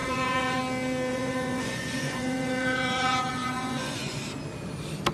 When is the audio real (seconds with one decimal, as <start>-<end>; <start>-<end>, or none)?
0.6-1.1; 4.2-5.1